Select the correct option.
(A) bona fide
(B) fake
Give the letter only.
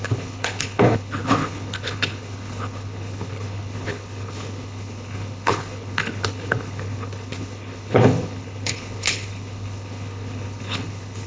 B